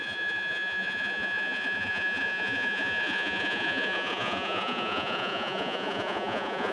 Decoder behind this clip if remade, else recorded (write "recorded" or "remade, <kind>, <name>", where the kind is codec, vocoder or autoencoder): remade, vocoder, Vocos